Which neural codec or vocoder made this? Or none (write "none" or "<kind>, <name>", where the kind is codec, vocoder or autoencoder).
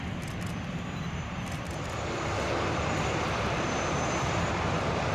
none